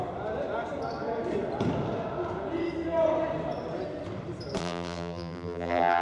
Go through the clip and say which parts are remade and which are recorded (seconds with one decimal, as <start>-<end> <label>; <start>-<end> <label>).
0.0-4.6 recorded; 4.6-6.0 remade